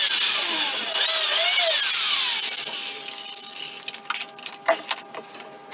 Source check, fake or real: real